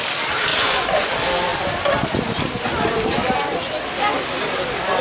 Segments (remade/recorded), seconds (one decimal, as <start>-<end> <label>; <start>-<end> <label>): 0.0-0.5 recorded; 0.5-1.1 remade; 1.1-5.0 recorded

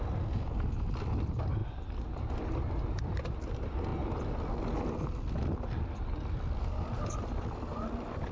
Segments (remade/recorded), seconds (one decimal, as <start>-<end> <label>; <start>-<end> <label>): 0.0-8.3 recorded